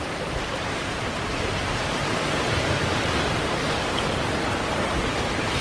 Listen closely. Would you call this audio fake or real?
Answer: fake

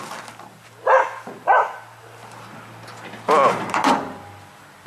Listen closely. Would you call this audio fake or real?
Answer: real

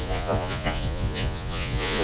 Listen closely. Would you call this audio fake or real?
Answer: fake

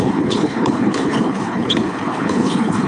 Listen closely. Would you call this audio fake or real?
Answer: fake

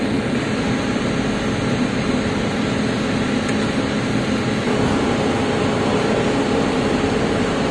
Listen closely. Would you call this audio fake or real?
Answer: real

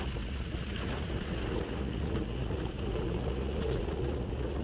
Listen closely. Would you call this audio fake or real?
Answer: fake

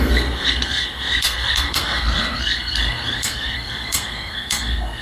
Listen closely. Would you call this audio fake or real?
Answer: fake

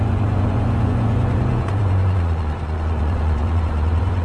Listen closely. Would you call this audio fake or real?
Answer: fake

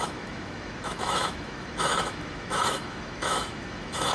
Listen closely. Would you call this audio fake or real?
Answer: fake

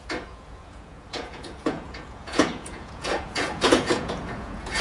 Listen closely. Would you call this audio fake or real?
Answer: fake